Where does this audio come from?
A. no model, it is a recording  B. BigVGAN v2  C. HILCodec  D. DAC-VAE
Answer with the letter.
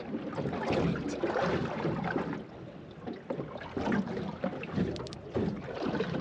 A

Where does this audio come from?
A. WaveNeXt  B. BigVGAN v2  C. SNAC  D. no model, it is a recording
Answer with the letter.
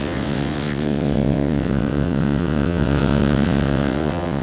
A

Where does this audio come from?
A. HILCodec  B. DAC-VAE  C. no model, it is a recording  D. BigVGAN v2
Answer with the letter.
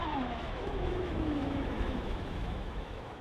B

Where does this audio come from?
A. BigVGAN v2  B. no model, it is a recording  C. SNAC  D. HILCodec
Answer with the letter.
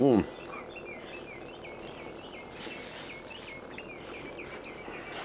B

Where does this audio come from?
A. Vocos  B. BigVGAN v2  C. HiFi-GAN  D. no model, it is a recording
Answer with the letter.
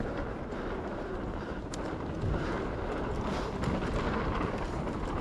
D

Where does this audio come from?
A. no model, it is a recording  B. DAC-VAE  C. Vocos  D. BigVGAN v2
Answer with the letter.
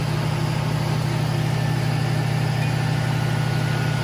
A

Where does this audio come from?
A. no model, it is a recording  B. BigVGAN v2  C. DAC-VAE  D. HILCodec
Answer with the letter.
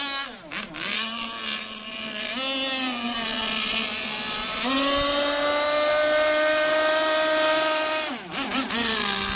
A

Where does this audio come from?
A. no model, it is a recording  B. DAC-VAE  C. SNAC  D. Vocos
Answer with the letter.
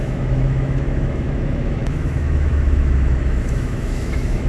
B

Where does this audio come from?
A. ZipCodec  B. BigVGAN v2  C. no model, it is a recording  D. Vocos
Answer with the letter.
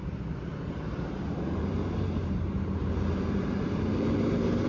B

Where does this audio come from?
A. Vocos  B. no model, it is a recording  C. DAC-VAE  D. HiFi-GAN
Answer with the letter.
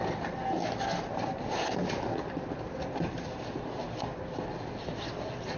B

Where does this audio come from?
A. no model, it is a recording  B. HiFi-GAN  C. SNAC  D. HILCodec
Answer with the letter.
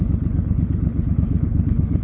D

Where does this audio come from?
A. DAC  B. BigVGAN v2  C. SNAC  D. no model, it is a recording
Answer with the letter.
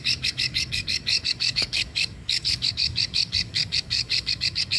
A